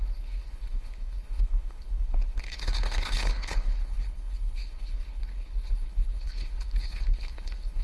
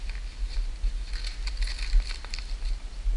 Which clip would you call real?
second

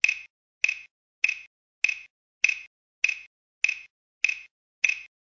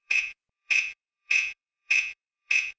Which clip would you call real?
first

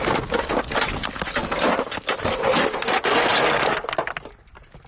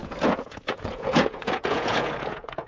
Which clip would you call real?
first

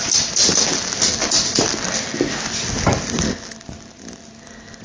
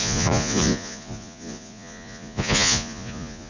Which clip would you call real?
first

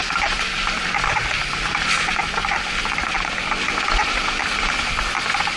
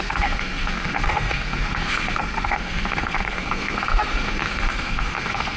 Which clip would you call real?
first